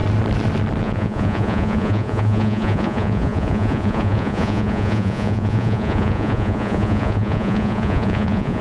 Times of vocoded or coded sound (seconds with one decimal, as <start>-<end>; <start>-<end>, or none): 0.8-8.6